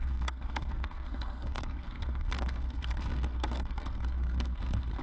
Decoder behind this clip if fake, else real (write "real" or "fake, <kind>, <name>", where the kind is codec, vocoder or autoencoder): fake, codec, SNAC